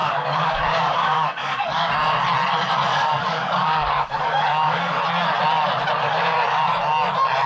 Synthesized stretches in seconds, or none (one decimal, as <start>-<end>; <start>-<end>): 0.0-1.9; 2.9-5.0